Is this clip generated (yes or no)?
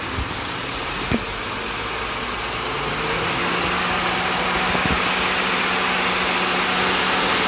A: no